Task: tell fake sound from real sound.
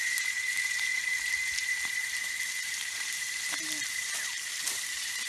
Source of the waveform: fake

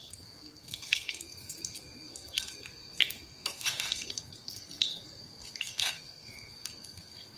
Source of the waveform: fake